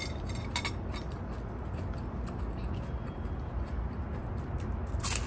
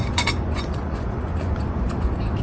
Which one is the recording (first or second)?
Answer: first